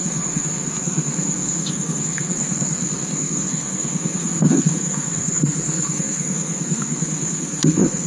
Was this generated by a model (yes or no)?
yes